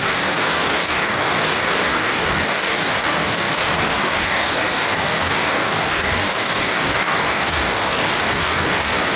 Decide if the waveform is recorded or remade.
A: remade